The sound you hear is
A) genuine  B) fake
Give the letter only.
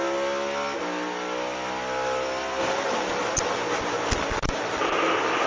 A